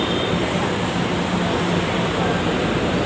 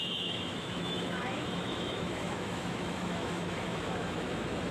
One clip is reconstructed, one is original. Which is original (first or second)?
first